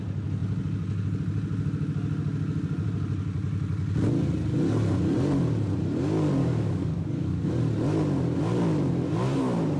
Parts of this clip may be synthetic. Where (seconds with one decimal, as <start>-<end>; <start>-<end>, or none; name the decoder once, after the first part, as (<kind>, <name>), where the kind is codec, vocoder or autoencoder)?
6.4-7.5 (codec, DAC)